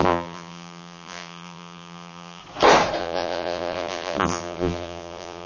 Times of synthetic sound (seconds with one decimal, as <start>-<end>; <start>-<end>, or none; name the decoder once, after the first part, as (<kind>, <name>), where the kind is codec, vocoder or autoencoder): 0.0-2.4 (vocoder, BigVGAN v2); 3.0-5.5